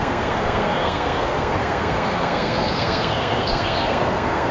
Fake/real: fake